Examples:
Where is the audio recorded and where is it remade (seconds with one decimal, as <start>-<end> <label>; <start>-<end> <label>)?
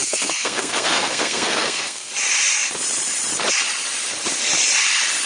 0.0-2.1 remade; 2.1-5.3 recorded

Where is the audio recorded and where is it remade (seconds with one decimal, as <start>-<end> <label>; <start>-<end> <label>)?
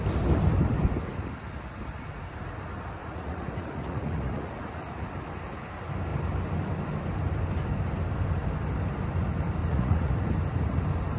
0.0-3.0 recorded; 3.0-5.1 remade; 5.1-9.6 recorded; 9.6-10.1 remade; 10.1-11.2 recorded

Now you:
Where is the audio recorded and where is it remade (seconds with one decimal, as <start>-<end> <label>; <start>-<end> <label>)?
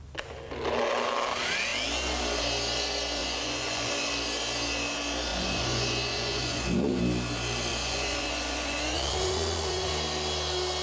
0.0-3.2 recorded; 3.2-3.9 remade; 3.9-5.3 recorded; 5.3-7.0 remade; 7.0-7.7 recorded; 7.7-9.9 remade; 9.9-10.8 recorded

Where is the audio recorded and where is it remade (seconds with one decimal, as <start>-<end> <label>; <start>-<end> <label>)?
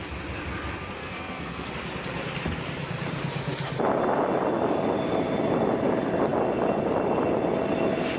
0.0-1.0 recorded; 1.0-1.7 remade; 1.7-8.2 recorded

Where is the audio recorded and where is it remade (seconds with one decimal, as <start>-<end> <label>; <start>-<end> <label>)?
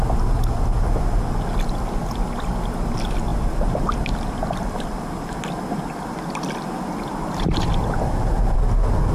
0.0-9.1 recorded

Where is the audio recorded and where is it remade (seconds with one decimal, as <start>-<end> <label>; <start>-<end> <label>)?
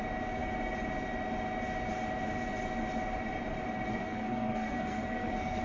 0.0-3.9 recorded; 3.9-5.6 remade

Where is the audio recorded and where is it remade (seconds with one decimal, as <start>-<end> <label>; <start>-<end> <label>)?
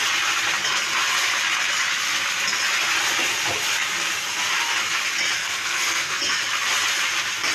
0.0-5.4 recorded; 5.4-6.2 remade; 6.2-7.5 recorded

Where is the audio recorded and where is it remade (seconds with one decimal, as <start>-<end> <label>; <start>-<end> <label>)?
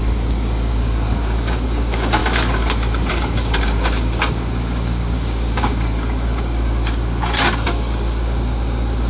0.0-9.1 remade